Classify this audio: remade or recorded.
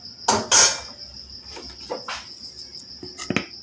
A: recorded